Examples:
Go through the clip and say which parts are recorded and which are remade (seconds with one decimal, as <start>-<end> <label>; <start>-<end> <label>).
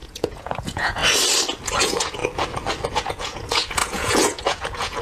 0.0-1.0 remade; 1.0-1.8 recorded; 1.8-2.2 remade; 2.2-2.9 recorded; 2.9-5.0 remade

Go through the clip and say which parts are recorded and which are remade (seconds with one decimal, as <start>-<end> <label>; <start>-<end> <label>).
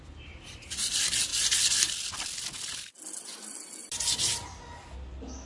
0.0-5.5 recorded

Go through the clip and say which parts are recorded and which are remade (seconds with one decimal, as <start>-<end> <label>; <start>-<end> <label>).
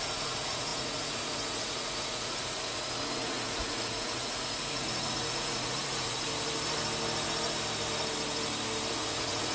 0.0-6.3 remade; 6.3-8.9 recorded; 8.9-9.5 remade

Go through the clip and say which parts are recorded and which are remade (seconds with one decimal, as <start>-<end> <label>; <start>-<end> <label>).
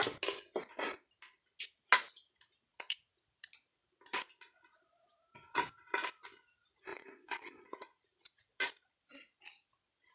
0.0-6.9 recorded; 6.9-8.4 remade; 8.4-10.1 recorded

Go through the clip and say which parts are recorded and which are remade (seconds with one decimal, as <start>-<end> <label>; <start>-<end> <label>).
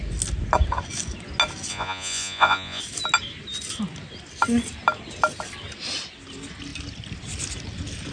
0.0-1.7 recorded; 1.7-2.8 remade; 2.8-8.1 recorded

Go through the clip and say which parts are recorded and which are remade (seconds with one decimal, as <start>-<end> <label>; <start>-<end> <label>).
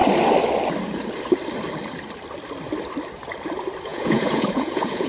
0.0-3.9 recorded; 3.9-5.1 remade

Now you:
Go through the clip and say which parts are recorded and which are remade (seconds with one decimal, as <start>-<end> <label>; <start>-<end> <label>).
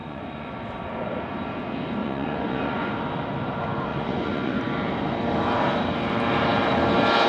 0.0-0.5 remade; 0.5-2.0 recorded; 2.0-2.9 remade; 2.9-3.9 recorded; 3.9-4.6 remade; 4.6-7.3 recorded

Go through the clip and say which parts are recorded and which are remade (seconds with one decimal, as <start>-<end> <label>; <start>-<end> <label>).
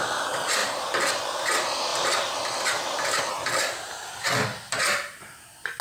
0.0-5.8 recorded